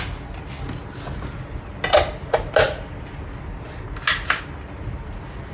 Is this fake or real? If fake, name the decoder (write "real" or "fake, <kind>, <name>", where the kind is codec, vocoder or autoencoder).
real